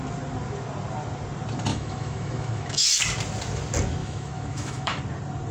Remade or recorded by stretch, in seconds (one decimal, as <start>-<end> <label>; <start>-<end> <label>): 0.0-1.7 recorded; 1.7-3.0 remade; 3.0-4.0 recorded; 4.0-5.0 remade; 5.0-5.5 recorded